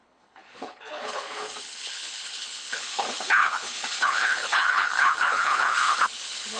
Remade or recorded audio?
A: remade